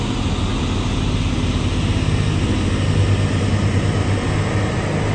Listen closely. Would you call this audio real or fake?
real